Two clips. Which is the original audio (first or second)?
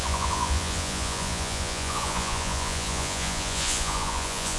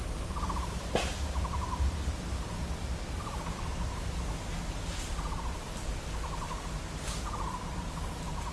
second